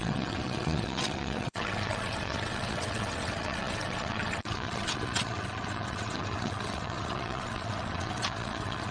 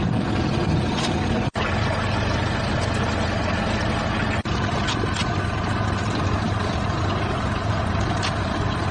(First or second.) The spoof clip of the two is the first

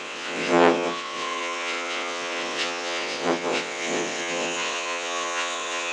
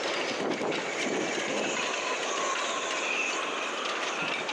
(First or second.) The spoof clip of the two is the first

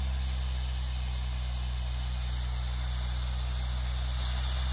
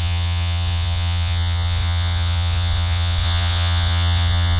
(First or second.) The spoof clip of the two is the second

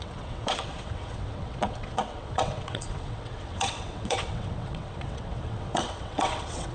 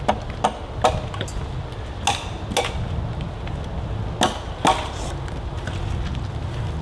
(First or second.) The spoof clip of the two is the first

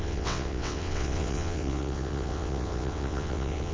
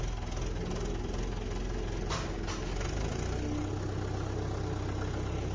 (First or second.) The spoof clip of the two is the first